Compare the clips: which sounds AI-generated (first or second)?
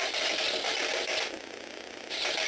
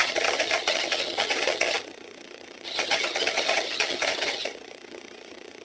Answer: second